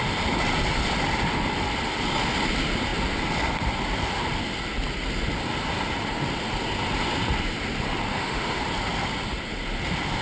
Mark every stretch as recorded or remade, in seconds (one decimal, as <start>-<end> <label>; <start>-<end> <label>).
0.0-8.1 recorded; 8.1-8.6 remade; 8.6-10.2 recorded